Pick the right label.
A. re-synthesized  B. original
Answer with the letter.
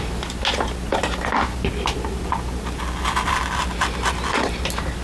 B